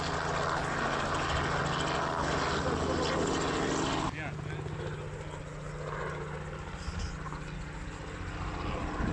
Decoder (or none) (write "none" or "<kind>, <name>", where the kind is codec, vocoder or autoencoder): none